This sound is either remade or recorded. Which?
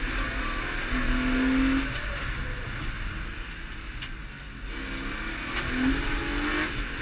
recorded